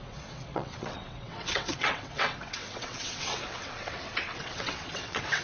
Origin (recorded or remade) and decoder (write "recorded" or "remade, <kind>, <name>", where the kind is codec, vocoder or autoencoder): remade, vocoder, WaveNeXt